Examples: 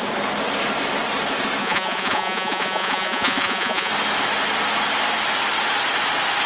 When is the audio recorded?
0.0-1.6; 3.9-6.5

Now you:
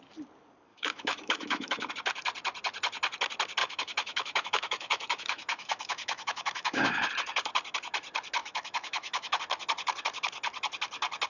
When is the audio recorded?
0.0-0.7; 1.9-3.6; 7.1-8.4; 9.4-11.3

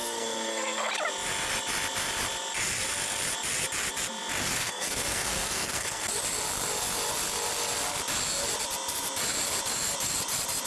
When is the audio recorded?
0.9-4.5; 6.1-10.7

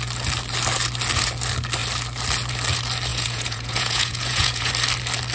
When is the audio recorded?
0.0-3.1; 4.7-5.3

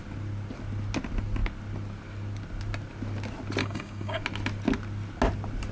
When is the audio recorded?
0.0-3.6; 4.2-5.7

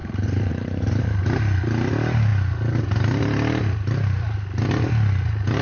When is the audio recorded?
0.0-5.6